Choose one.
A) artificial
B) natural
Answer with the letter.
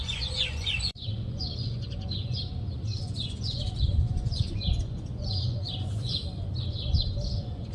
A